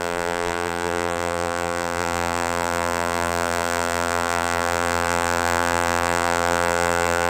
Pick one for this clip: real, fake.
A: fake